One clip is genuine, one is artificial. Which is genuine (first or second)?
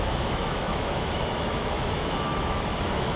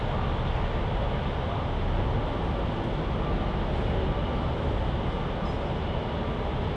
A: second